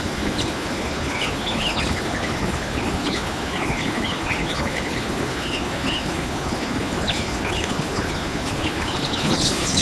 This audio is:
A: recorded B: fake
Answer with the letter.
B